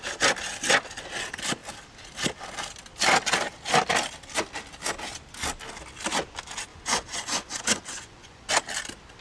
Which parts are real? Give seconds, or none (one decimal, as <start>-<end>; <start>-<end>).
0.0-6.7; 8.5-9.2